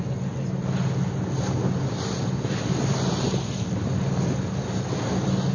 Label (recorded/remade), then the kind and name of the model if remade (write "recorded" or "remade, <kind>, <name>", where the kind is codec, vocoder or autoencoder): recorded